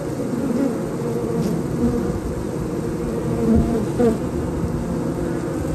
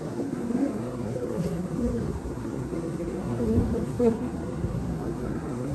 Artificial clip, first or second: second